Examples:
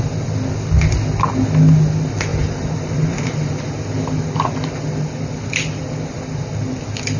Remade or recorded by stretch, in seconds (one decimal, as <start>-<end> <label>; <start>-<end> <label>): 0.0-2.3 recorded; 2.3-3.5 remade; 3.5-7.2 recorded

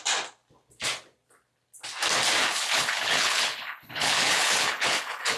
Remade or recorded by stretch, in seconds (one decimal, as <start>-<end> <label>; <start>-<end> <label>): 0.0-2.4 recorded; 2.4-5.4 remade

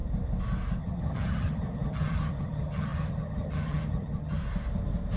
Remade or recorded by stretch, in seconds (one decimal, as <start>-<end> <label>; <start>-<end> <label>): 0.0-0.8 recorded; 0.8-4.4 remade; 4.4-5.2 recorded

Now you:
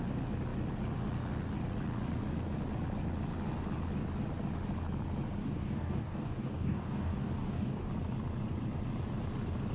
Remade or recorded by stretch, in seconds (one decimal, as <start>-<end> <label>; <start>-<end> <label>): 0.0-5.4 recorded; 5.4-7.9 remade; 7.9-9.7 recorded

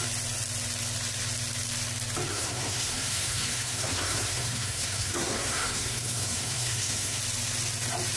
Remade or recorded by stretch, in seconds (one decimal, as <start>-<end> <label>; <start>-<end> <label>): 0.0-2.3 recorded; 2.3-7.2 remade; 7.2-8.2 recorded

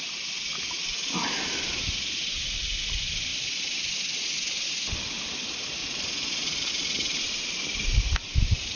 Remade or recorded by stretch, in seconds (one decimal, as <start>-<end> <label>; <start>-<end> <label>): 0.0-5.8 recorded; 5.8-6.7 remade; 6.7-8.8 recorded